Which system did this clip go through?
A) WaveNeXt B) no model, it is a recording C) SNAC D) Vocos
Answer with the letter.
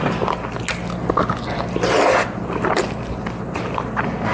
B